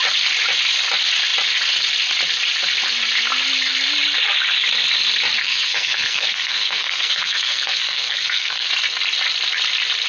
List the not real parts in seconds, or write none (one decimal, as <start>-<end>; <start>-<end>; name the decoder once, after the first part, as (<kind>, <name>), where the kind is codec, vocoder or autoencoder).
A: 5.4-8.7 (codec, SNAC)